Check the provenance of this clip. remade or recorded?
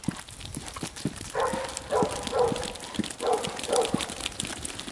recorded